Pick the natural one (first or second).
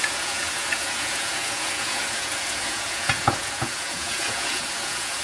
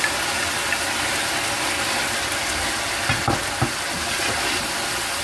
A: second